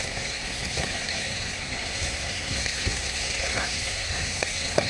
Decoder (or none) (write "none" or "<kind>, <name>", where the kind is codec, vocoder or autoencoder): codec, SNAC